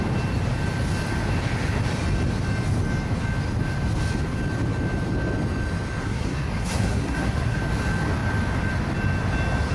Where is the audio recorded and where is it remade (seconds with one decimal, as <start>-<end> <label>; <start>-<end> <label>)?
0.0-6.0 recorded; 6.0-7.6 remade; 7.6-9.7 recorded